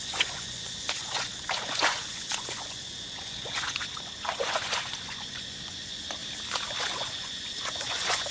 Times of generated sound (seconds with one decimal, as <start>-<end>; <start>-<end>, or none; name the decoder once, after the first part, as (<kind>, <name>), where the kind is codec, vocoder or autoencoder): 0.0-6.2 (vocoder, Vocos); 6.8-8.3